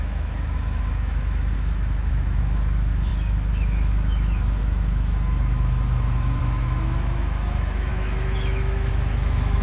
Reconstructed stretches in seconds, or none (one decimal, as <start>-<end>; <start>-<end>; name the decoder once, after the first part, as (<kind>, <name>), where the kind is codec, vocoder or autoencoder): 0.0-9.6 (autoencoder, DAC-VAE)